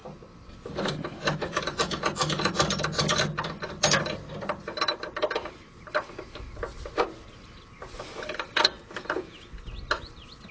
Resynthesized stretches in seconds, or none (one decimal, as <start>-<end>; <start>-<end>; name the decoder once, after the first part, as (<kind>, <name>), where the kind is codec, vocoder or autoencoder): none